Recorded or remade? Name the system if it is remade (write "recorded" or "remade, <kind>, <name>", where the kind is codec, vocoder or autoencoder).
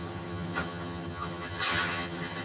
remade, vocoder, HiFi-GAN